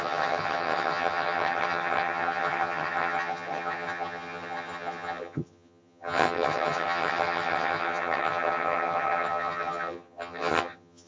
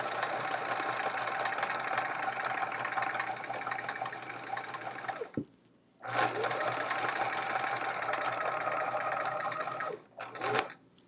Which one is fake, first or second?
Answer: first